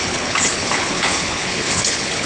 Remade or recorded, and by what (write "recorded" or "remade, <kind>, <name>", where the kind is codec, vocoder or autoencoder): remade, codec, HILCodec